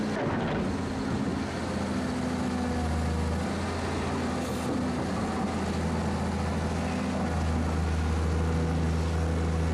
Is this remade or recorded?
recorded